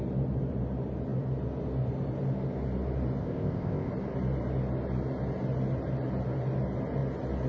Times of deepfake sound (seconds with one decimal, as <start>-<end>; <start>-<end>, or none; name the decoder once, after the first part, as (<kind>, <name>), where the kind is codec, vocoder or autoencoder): 3.2-3.9 (codec, ZipCodec)